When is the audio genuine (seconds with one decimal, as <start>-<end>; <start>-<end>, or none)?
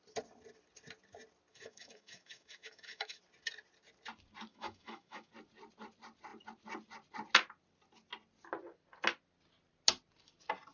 0.0-1.5; 3.2-4.5; 5.3-10.7